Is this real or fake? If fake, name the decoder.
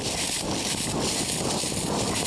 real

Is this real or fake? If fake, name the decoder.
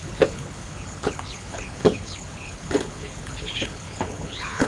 fake, codec, HILCodec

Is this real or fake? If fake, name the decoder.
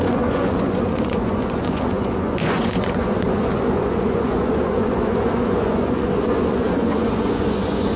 fake, vocoder, Vocos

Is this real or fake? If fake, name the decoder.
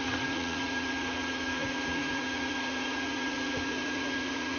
fake, vocoder, Vocos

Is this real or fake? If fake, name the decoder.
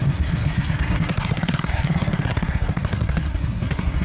fake, codec, SNAC